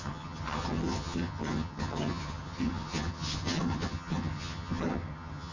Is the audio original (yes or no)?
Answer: no